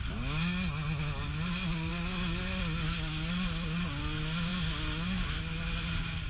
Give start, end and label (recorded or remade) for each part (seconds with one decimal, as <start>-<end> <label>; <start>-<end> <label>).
0.0-6.3 recorded